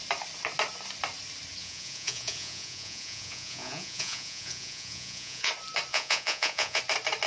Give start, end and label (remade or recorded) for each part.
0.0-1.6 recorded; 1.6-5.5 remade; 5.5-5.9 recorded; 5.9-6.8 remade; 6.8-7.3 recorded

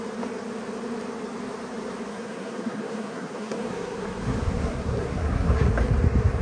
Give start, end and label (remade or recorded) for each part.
0.0-2.1 recorded; 2.1-5.7 remade; 5.7-6.4 recorded

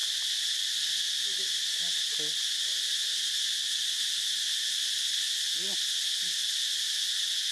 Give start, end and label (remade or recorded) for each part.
0.0-7.5 recorded

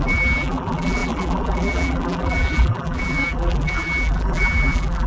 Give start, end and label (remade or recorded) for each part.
0.0-5.1 remade